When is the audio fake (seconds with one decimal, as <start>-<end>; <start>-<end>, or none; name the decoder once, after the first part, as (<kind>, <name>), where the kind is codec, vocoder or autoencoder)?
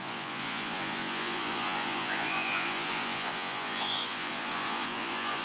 0.0-5.4 (vocoder, Vocos)